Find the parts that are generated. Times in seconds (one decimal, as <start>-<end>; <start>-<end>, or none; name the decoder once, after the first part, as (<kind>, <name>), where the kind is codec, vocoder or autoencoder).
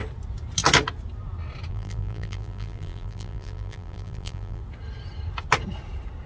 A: 1.7-4.6 (vocoder, BigVGAN v2)